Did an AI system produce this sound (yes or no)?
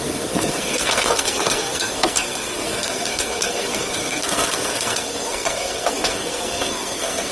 yes